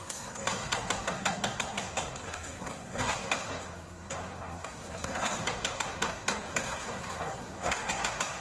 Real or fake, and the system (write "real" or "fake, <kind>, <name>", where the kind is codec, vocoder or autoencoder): fake, codec, SNAC